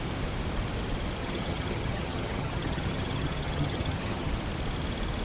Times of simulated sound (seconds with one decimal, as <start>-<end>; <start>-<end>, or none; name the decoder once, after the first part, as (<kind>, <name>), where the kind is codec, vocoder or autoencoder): 1.2-4.3 (vocoder, HiFi-GAN)

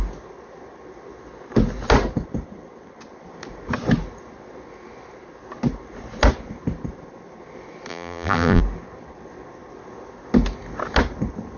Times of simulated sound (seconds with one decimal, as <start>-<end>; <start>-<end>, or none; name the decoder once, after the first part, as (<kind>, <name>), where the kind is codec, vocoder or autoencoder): 7.9-8.6 (vocoder, BigVGAN v2)

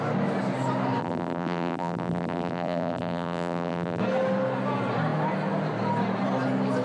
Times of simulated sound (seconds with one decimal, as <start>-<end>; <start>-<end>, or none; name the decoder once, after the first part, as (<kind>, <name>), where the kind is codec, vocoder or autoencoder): 1.0-4.0 (vocoder, BigVGAN v2)

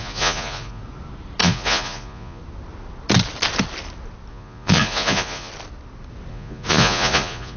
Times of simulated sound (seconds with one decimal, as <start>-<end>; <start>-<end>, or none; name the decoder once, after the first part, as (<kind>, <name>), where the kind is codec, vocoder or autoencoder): 0.0-0.8 (vocoder, Vocos); 1.4-2.4; 4.3-5.5; 6.3-7.6